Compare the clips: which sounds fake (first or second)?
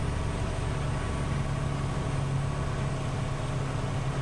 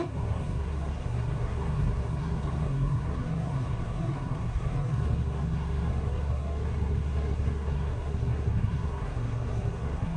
second